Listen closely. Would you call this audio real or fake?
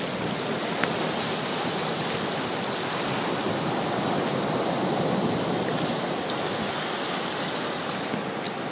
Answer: real